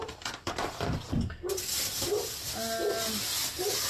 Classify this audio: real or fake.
real